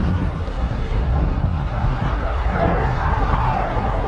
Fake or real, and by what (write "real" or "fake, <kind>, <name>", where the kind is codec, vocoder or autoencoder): fake, codec, SNAC